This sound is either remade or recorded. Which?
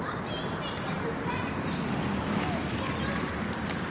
recorded